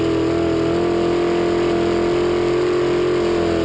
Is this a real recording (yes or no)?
yes